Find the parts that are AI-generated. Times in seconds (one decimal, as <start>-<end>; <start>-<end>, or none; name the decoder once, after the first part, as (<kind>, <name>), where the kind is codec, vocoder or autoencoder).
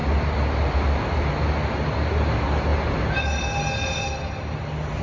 none